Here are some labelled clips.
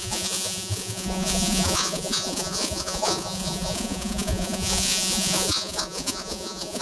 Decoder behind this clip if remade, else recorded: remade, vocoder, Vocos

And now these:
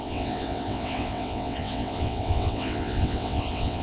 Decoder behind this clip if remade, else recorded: remade, vocoder, WaveNeXt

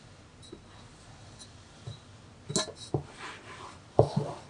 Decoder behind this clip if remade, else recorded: recorded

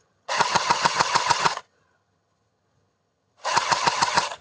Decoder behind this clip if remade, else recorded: remade, vocoder, HiFi-GAN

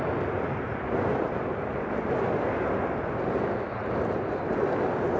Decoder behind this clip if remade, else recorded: recorded